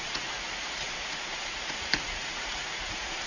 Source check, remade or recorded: remade